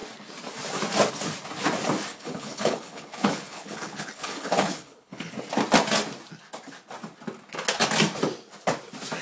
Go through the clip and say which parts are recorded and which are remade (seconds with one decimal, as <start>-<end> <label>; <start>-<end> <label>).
0.0-2.1 recorded; 2.1-5.3 remade; 5.3-9.2 recorded